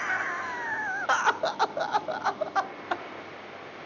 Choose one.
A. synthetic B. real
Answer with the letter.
B